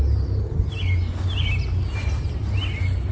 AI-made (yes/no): no